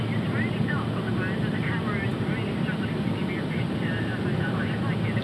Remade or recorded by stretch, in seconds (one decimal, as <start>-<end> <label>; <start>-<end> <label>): 0.0-5.2 recorded